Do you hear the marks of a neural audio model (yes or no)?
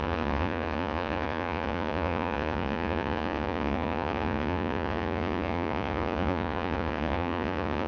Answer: yes